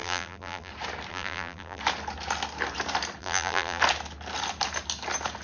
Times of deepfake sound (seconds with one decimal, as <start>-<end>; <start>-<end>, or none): 0.0-0.7; 1.1-1.8; 3.2-3.8